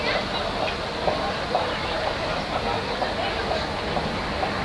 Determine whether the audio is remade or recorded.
recorded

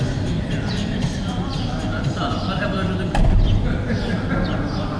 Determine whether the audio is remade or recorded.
remade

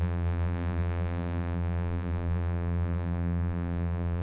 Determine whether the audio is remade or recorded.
remade